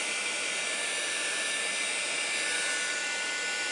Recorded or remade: recorded